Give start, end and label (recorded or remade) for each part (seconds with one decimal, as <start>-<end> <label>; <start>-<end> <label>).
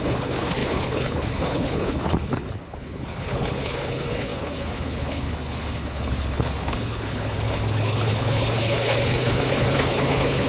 0.0-10.5 remade